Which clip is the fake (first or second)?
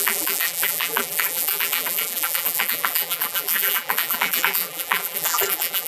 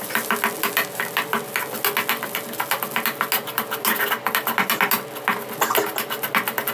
first